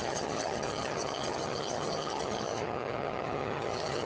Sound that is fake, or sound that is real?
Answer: fake